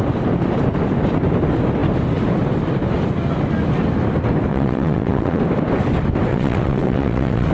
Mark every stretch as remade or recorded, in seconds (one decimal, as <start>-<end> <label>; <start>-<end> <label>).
0.0-4.5 recorded; 4.5-5.4 remade; 5.4-6.3 recorded; 6.3-7.5 remade